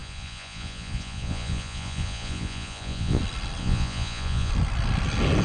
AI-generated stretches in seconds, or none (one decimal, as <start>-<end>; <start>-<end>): 0.0-3.2; 3.6-4.5